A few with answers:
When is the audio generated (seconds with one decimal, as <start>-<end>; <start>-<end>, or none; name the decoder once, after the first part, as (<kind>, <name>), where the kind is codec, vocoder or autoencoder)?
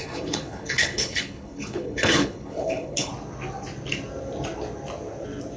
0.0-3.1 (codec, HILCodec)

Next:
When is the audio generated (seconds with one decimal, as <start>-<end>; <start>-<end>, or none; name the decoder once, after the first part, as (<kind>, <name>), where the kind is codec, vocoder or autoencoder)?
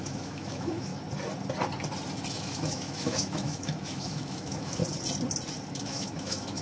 0.0-0.9 (autoencoder, DAC-VAE); 2.3-4.8; 5.7-6.6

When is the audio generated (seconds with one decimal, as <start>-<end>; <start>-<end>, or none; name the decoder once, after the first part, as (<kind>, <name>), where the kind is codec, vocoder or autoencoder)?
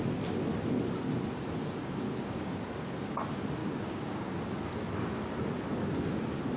1.8-2.5 (codec, DAC); 3.6-4.4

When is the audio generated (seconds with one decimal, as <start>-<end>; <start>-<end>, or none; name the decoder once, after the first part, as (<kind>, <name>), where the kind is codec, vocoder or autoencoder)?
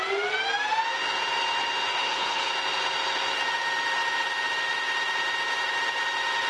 1.9-2.5 (codec, HILCodec)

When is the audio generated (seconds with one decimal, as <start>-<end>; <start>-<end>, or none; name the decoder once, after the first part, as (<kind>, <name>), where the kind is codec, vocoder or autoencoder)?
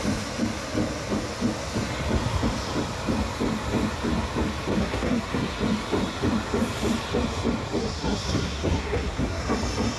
4.8-5.5 (codec, SNAC); 7.8-9.4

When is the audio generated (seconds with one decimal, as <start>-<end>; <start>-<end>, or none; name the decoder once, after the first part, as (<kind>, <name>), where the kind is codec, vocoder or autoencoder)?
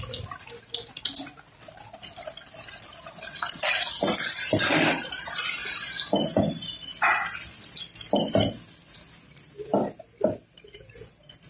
none